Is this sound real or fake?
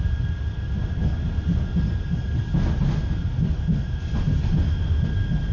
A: real